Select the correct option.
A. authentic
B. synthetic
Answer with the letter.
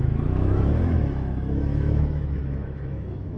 B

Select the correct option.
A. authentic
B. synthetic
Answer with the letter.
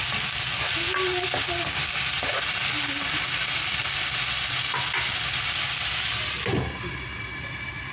A